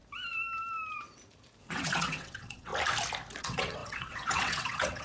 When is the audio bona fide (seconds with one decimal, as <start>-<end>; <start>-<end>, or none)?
0.0-1.6; 2.7-3.4